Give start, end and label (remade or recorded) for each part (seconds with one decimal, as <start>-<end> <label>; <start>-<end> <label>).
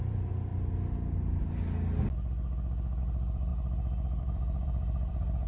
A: 0.0-0.5 remade; 0.5-3.0 recorded; 3.0-3.5 remade; 3.5-4.2 recorded; 4.2-5.5 remade